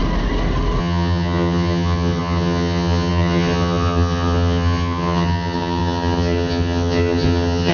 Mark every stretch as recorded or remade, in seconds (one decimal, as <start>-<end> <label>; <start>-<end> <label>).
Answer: 0.0-0.8 recorded; 0.8-7.7 remade